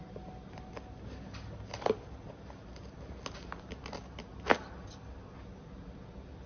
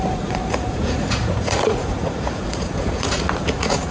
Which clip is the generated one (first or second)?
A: second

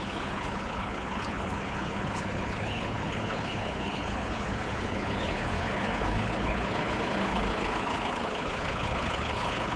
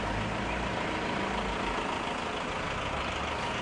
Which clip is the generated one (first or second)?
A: first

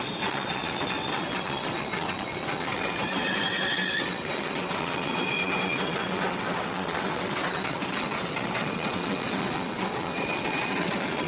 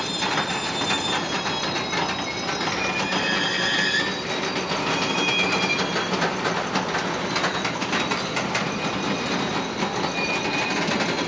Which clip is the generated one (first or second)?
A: first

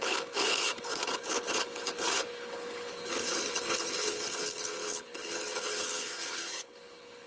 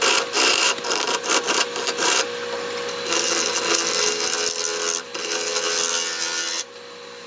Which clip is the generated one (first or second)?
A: first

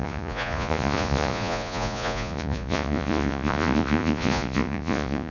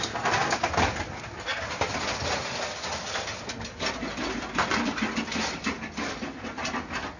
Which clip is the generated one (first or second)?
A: first